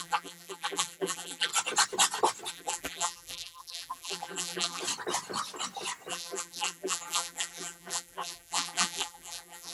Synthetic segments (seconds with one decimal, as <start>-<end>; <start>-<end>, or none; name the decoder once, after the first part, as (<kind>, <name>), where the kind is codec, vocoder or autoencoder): 0.0-1.5 (vocoder, BigVGAN v2); 2.5-4.8; 6.1-9.7